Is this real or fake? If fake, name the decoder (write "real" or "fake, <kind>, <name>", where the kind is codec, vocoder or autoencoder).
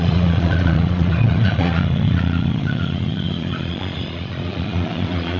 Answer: fake, vocoder, Vocos